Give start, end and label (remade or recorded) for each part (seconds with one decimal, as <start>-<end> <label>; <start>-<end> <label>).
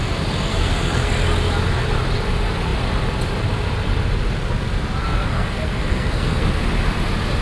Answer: 0.0-0.5 recorded; 0.5-1.1 remade; 1.1-5.0 recorded; 5.0-6.6 remade; 6.6-7.4 recorded